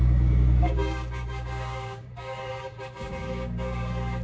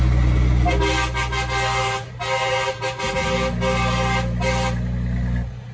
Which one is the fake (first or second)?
first